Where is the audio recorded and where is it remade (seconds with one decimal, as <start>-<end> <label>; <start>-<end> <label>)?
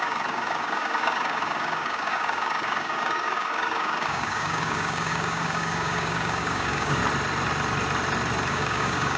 0.0-7.0 remade; 7.0-8.5 recorded; 8.5-9.2 remade